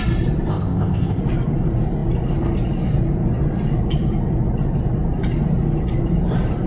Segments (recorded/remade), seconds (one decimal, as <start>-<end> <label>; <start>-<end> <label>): 0.0-0.5 recorded; 0.5-1.2 remade; 1.2-6.7 recorded